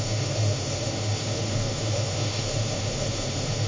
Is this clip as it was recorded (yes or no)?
no